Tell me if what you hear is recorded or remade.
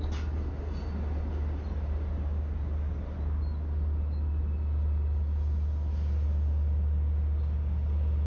recorded